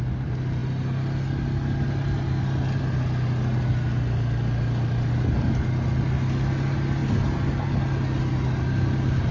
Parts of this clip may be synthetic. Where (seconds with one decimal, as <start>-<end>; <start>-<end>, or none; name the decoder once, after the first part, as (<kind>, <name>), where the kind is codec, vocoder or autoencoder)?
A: none